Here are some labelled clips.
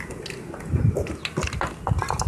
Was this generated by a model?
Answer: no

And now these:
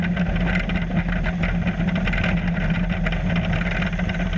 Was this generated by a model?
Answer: no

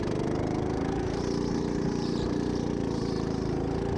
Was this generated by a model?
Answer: yes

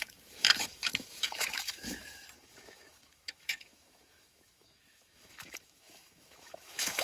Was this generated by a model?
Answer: yes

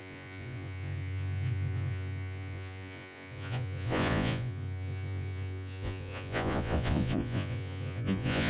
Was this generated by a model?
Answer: yes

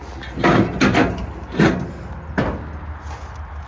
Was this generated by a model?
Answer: no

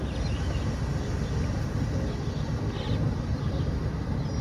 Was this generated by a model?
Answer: no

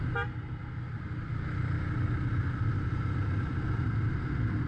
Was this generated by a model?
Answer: no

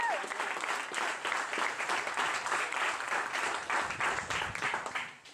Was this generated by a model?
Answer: yes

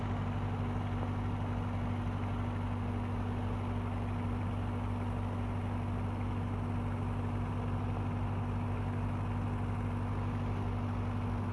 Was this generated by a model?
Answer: no